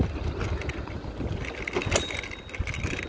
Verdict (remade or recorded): recorded